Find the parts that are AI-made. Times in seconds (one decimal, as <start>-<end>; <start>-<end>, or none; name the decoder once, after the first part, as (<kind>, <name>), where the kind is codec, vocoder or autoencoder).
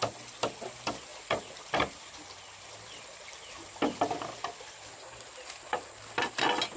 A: none